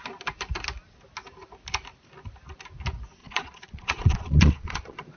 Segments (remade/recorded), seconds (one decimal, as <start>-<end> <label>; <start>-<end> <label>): 0.0-3.2 recorded; 3.2-5.2 remade